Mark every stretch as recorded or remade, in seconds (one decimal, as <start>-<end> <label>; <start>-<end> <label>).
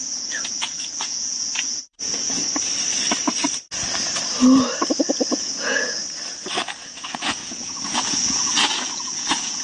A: 0.0-2.4 remade; 2.4-5.3 recorded; 5.3-6.0 remade; 6.0-6.8 recorded; 6.8-9.6 remade